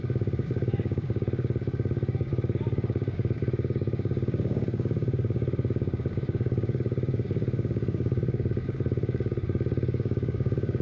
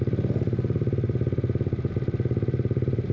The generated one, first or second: first